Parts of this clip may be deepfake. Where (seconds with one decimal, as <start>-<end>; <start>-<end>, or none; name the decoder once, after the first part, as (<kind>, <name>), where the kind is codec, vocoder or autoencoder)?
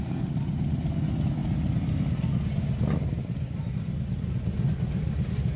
none